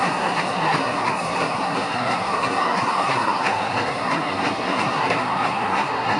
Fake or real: fake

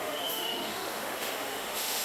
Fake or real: fake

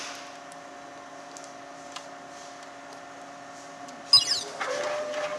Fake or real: real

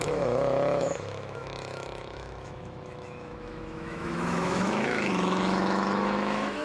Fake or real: fake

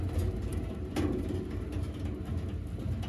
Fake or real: real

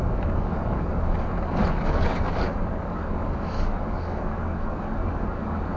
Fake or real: fake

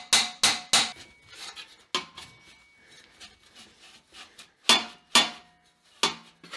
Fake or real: real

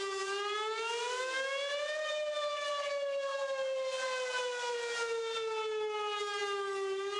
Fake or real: real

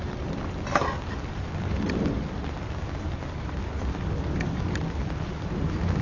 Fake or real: real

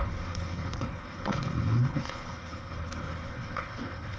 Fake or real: fake